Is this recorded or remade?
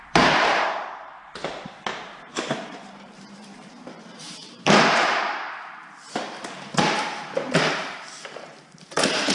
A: remade